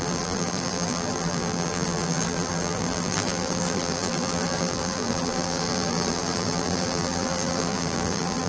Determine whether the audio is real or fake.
fake